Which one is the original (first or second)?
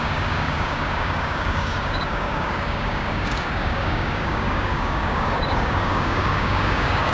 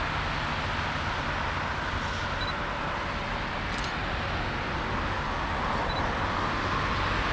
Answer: second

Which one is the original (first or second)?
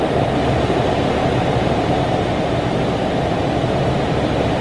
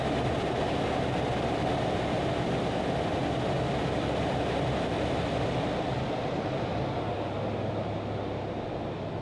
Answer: second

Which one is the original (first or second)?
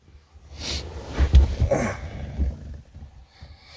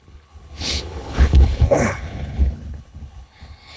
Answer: first